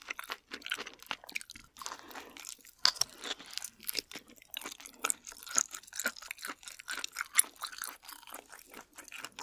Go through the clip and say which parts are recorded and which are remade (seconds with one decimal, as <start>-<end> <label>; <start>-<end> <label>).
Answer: 0.0-9.4 recorded